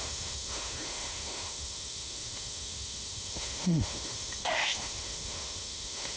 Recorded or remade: remade